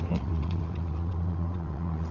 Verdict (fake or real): fake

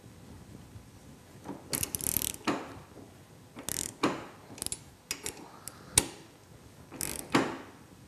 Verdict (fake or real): real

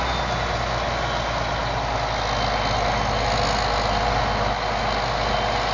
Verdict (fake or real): real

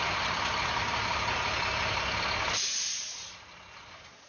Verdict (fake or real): real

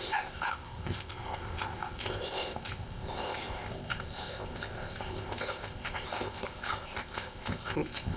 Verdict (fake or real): fake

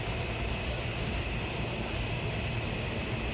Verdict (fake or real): real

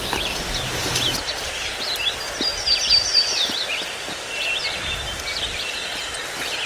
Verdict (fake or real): real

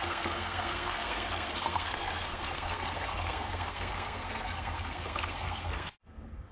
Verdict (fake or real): fake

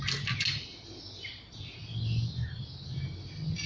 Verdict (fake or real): real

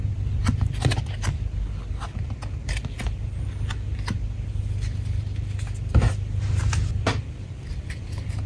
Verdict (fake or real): real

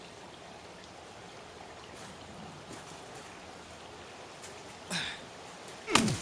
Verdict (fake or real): real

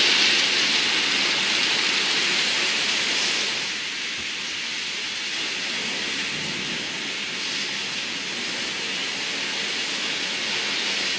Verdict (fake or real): real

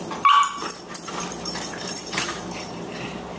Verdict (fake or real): fake